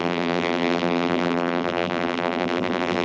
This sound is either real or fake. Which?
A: fake